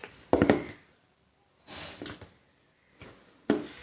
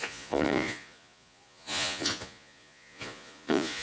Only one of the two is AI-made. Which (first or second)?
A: second